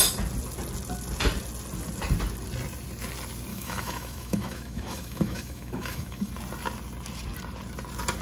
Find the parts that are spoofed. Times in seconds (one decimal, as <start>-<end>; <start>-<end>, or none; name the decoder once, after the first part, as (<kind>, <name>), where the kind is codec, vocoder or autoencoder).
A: 3.5-6.3 (autoencoder, DAC-VAE)